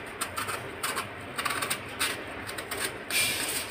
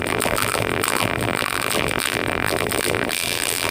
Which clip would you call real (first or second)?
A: first